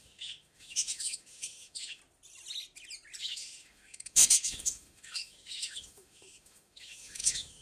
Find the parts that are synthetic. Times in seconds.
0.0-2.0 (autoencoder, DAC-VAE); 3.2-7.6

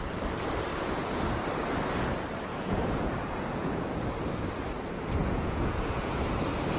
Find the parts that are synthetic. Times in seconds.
0.7-1.2 (vocoder, Vocos); 2.5-4.1; 5.2-6.1

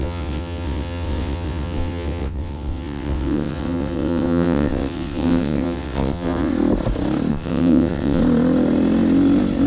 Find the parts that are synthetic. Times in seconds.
0.0-6.5 (vocoder, WaveNeXt); 7.3-8.2

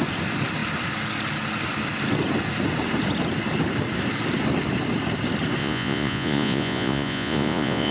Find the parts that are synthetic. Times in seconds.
5.6-7.9 (vocoder, Vocos)

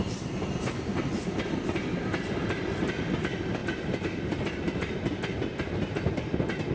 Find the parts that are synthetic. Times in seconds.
none

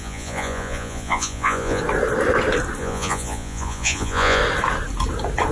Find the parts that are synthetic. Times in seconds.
0.0-1.8 (vocoder, Vocos); 2.8-4.4

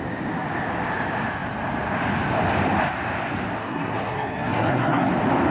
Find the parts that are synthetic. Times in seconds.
3.6-5.1 (codec, SNAC)